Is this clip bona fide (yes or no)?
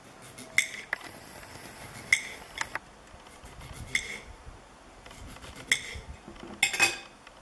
yes